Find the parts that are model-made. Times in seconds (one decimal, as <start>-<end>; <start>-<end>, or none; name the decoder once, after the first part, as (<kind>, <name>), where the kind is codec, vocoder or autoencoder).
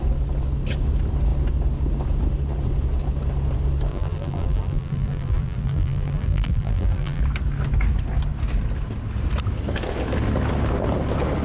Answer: 3.9-7.2 (vocoder, BigVGAN v2)